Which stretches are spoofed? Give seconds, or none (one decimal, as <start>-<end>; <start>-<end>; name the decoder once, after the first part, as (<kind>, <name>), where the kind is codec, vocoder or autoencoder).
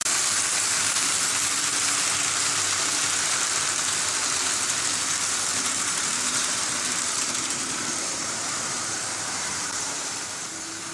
5.5-10.0 (vocoder, BigVGAN v2)